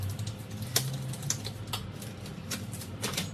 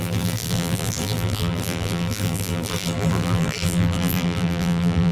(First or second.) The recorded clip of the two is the first